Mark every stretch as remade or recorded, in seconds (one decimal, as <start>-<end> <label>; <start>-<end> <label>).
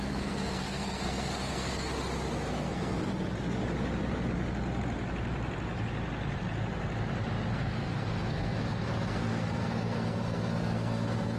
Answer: 0.0-1.9 remade; 1.9-2.5 recorded; 2.5-3.1 remade; 3.1-7.5 recorded; 7.5-11.4 remade